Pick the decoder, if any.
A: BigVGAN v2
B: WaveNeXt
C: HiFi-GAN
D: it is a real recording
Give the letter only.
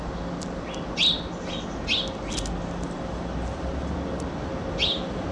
D